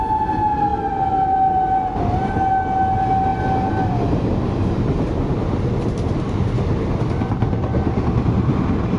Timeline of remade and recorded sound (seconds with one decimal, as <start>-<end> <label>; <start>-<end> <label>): 0.0-9.0 recorded